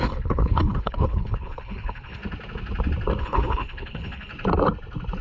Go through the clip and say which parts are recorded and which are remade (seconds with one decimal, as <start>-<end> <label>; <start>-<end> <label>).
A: 0.0-2.2 remade; 2.2-3.2 recorded; 3.2-4.3 remade; 4.3-5.2 recorded